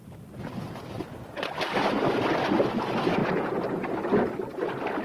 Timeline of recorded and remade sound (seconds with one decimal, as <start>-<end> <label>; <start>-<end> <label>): 0.0-5.0 recorded